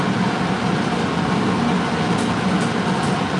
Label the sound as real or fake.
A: real